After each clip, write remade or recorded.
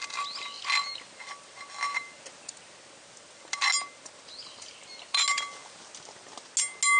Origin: recorded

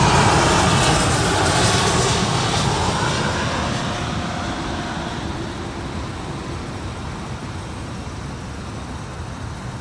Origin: recorded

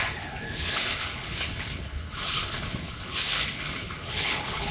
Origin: remade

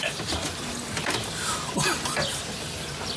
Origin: recorded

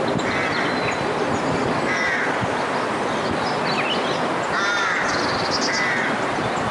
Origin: recorded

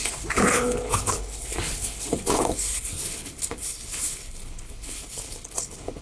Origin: remade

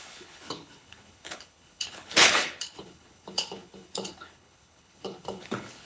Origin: remade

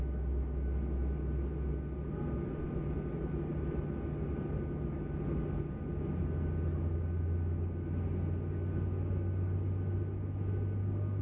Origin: recorded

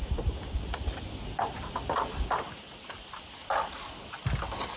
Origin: recorded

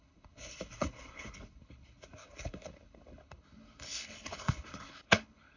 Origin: remade